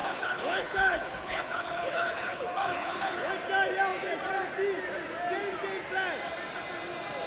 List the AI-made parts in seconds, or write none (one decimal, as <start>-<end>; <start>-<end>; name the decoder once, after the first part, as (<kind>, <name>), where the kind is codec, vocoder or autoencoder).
0.0-3.3 (codec, HILCodec)